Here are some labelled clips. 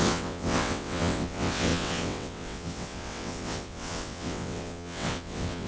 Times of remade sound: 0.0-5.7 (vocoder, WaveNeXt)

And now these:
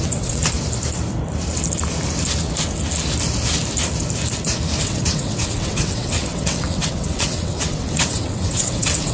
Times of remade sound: 0.0-0.4 (vocoder, WaveNeXt); 4.8-9.1

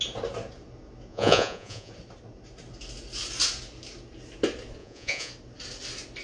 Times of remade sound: 1.1-1.9 (vocoder, Vocos); 4.8-5.3

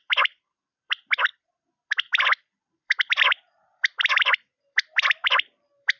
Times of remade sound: 0.0-6.0 (vocoder, BigVGAN v2)